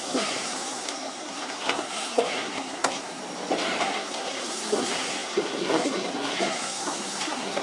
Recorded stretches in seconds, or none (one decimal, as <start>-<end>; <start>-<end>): 3.2-3.8